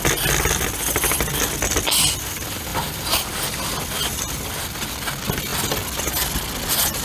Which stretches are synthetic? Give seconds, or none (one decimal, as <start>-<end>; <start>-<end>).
2.7-3.4

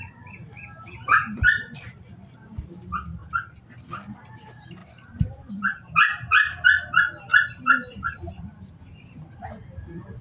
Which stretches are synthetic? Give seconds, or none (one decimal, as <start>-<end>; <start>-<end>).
4.8-5.5; 7.3-8.4

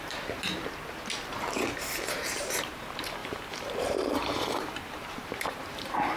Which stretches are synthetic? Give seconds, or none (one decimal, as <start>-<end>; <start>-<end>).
0.0-0.6; 2.1-6.2

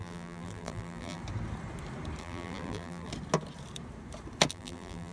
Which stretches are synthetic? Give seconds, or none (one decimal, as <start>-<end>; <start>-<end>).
0.0-1.2; 2.2-3.1; 4.5-5.1